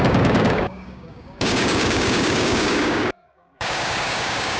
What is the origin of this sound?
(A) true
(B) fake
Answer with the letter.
B